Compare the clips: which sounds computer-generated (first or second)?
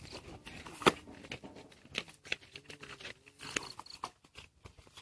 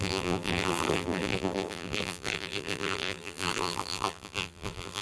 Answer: second